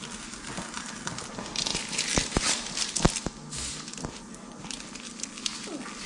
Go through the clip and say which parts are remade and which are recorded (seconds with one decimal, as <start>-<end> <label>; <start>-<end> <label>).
0.0-6.1 recorded